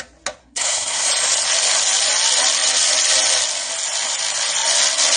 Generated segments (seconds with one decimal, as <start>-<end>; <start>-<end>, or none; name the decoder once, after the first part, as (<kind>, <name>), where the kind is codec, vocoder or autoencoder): 0.4-1.1 (codec, SNAC)